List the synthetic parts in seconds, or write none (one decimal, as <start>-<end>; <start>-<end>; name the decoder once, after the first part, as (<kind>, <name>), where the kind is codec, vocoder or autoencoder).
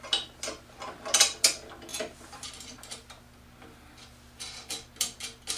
none